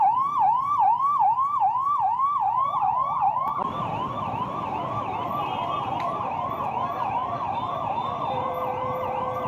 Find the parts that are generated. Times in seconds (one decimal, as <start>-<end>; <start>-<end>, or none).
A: 7.2-9.5